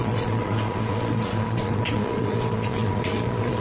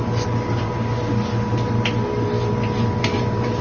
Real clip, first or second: second